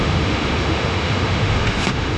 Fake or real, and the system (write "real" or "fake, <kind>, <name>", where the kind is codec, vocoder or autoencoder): fake, autoencoder, DAC-VAE